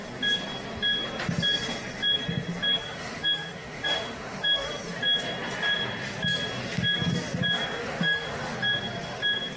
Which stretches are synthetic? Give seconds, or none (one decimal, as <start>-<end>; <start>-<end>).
2.8-4.7; 7.8-8.4

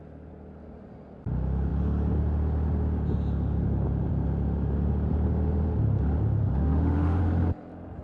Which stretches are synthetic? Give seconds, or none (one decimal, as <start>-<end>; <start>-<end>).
6.4-7.2

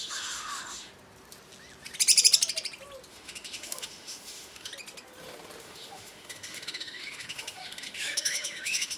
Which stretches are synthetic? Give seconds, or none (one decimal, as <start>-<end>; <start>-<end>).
0.0-0.9; 3.1-4.7; 5.6-9.0

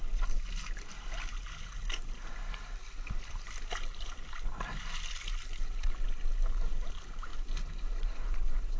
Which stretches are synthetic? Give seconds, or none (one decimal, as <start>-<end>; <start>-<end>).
none